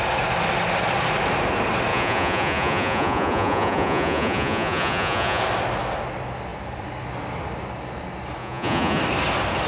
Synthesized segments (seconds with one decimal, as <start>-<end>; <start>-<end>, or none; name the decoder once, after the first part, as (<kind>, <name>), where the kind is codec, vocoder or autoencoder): 1.9-5.4 (vocoder, Vocos); 8.4-9.0